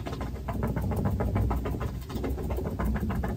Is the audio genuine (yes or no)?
yes